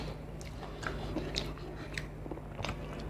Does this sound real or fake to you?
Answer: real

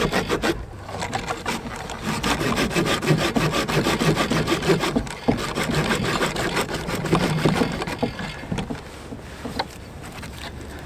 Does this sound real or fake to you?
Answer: real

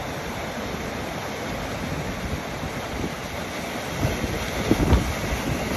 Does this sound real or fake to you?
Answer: real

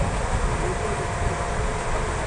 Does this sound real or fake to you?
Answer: real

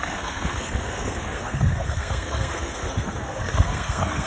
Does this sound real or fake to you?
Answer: fake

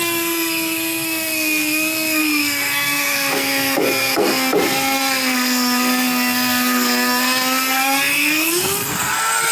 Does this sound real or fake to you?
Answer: fake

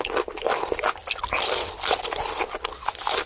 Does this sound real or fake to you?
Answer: real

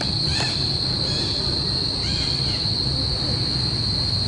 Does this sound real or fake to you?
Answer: real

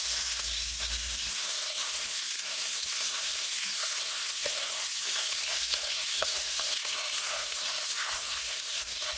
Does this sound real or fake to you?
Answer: fake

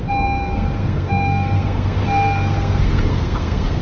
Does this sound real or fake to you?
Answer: fake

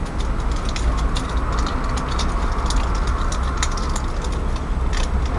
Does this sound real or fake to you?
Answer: real